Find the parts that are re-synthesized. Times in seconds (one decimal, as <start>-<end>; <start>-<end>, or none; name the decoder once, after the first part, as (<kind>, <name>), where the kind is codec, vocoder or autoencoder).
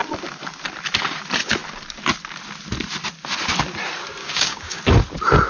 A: 4.2-4.8 (codec, DAC)